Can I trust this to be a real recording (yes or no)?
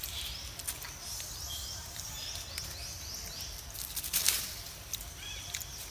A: yes